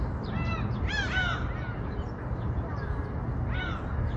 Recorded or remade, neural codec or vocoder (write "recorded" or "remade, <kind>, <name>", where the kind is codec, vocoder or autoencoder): recorded